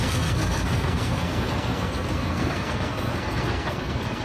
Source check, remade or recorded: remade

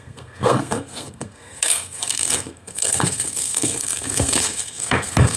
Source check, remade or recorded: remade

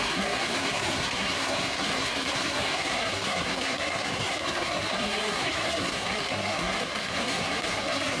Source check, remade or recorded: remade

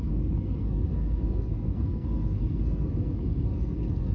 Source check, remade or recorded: remade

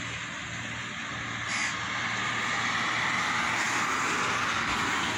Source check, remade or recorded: recorded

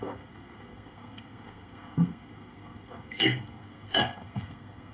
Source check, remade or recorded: remade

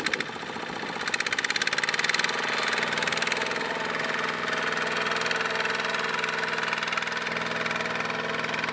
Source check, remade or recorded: recorded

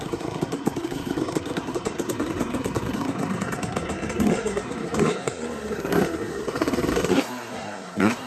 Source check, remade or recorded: remade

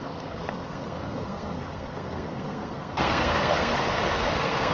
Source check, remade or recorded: remade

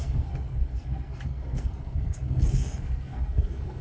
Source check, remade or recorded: remade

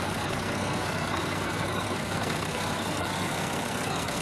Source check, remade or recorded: remade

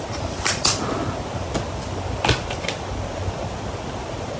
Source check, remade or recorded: recorded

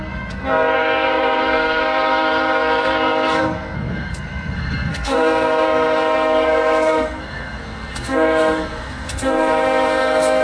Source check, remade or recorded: remade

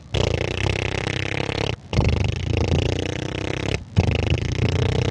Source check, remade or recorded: recorded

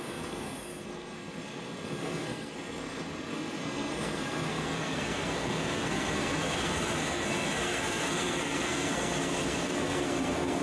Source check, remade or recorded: remade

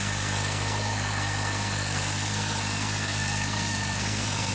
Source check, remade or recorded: remade